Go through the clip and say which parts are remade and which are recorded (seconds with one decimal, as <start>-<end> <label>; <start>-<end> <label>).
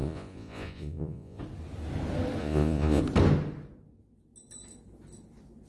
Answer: 0.0-1.4 remade; 1.4-2.4 recorded; 2.4-3.0 remade; 3.0-5.7 recorded